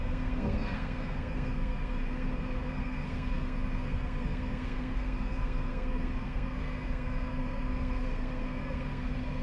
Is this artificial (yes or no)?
yes